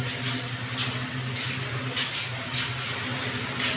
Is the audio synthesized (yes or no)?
no